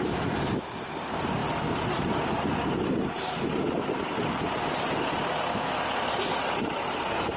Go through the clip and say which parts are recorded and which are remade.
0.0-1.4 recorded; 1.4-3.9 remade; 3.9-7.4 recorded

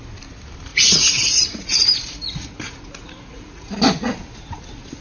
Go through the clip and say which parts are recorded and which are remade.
0.0-0.7 recorded; 0.7-3.7 remade; 3.7-5.0 recorded

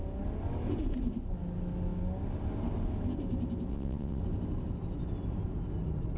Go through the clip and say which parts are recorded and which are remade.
0.0-3.7 recorded; 3.7-4.2 remade; 4.2-6.2 recorded

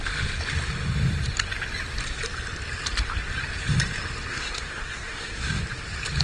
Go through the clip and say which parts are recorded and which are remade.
0.0-4.3 recorded; 4.3-5.6 remade; 5.6-6.2 recorded